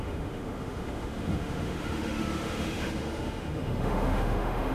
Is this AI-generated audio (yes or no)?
yes